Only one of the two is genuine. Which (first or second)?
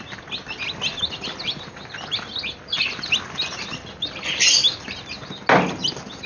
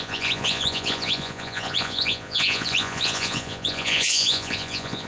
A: first